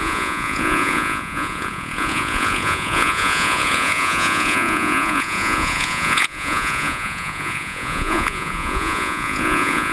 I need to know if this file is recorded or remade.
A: remade